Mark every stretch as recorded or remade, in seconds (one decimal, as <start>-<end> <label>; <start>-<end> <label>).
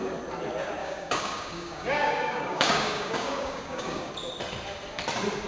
0.0-0.8 recorded; 0.8-4.1 remade; 4.1-5.5 recorded